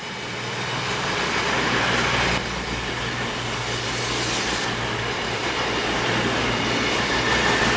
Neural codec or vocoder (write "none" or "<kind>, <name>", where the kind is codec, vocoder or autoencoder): none